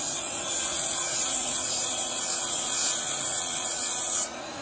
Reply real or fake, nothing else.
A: fake